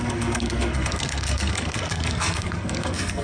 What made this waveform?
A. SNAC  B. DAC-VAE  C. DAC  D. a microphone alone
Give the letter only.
A